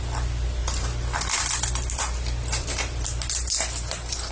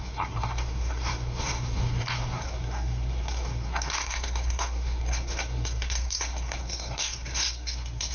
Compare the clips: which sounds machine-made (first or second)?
second